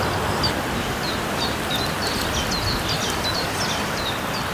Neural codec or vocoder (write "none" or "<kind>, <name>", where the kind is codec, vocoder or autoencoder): none